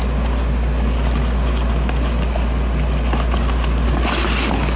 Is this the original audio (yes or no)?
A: yes